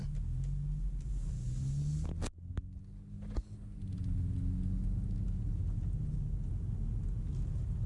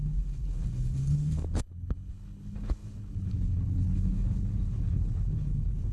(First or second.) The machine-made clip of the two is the second